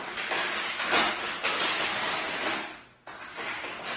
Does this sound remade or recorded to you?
recorded